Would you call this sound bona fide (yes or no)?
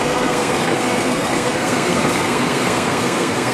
no